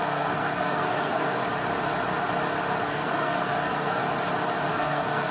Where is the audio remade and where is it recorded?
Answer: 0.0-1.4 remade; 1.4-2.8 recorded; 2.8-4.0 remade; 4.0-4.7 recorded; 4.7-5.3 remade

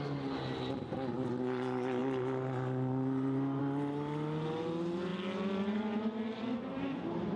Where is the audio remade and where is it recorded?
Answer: 0.0-7.4 recorded